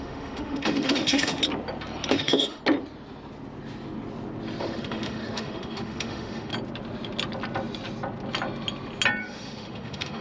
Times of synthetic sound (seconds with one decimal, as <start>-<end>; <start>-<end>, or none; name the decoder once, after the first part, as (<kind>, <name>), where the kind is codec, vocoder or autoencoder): 0.0-1.4 (autoencoder, DAC-VAE); 2.1-2.6; 4.6-6.5; 9.2-10.2